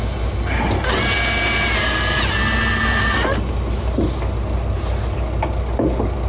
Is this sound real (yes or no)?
yes